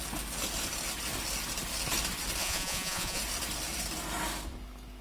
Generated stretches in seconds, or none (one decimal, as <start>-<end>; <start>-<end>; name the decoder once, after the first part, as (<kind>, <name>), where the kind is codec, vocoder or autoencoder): 2.4-3.2 (vocoder, Vocos)